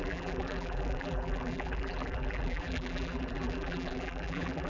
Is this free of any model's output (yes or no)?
no